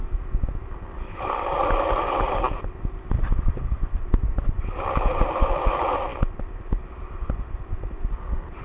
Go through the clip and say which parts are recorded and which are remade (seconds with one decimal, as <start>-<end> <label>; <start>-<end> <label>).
0.0-8.6 recorded